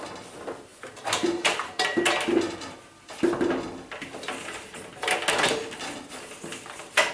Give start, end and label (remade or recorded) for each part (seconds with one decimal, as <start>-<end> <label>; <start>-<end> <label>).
0.0-0.7 recorded; 0.7-3.2 remade; 3.2-7.1 recorded